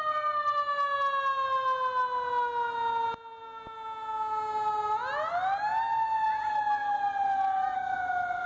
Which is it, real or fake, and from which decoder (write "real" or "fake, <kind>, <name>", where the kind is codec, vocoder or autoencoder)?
real